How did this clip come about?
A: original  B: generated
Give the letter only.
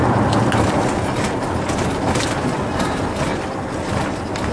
A